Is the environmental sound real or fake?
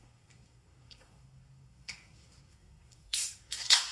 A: fake